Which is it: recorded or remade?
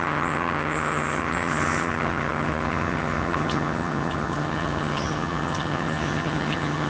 remade